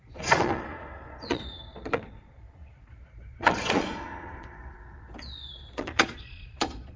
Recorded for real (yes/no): no